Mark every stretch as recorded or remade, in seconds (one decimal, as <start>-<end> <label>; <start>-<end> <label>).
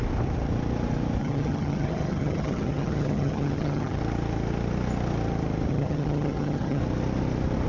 0.0-1.2 recorded; 1.2-4.0 remade; 4.0-5.7 recorded; 5.7-6.8 remade; 6.8-7.7 recorded